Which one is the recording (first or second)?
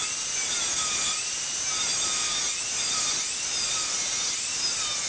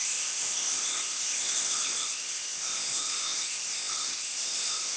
first